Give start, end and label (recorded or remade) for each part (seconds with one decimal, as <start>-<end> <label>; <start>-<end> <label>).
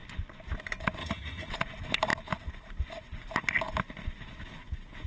0.0-1.0 recorded; 1.0-1.5 remade; 1.5-5.1 recorded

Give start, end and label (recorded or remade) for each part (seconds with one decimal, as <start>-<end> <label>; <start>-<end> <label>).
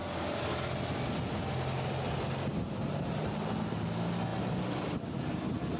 0.0-5.8 recorded